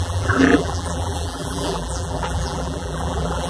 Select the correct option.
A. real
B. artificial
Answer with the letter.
B